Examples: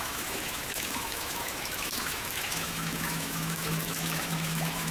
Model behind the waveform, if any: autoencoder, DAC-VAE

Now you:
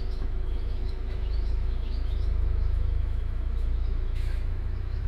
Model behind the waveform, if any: autoencoder, DAC-VAE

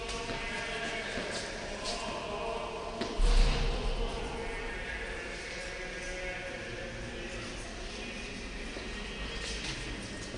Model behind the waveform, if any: none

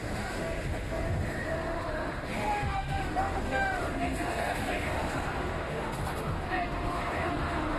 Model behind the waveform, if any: autoencoder, DAC-VAE